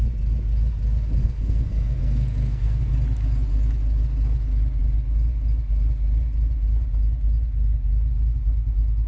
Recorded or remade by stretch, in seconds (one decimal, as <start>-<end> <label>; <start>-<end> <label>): 0.0-1.2 recorded; 1.2-2.8 remade; 2.8-9.1 recorded